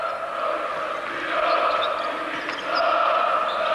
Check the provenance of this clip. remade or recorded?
recorded